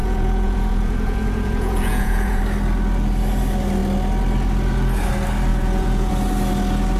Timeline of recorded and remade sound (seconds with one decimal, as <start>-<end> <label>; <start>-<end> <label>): 0.0-2.4 remade; 2.4-5.5 recorded; 5.5-6.1 remade; 6.1-7.0 recorded